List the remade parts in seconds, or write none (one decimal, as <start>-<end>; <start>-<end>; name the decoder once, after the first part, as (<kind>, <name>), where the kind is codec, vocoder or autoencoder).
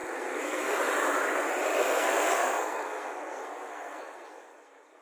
0.0-0.8 (codec, SNAC); 1.8-5.0